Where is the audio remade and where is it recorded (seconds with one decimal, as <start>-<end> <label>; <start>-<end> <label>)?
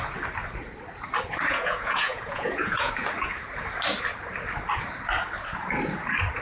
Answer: 0.0-1.5 recorded; 1.5-2.9 remade; 2.9-6.4 recorded